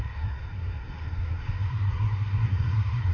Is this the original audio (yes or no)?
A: no